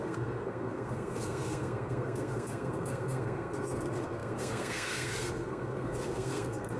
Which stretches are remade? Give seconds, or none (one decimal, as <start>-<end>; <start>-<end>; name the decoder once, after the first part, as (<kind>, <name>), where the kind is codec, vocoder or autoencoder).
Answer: 0.0-6.8 (codec, SNAC)